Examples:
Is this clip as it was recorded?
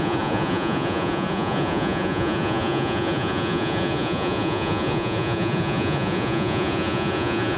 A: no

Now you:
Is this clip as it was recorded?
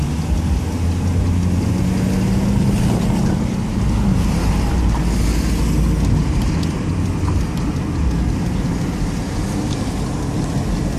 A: yes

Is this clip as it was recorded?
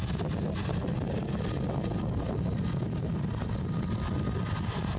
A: yes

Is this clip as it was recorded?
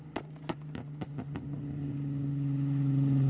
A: yes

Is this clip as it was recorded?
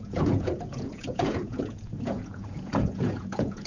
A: no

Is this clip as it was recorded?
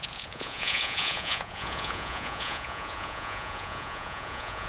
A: no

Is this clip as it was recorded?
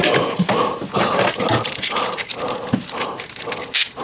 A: yes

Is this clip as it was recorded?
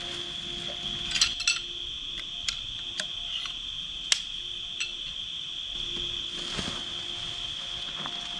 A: yes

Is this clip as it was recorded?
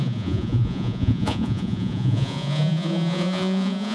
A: no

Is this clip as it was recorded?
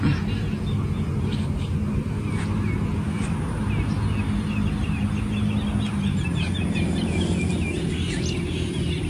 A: yes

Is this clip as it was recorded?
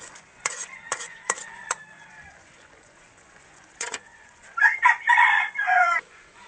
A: no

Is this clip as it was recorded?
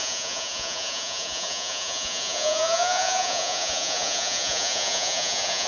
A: no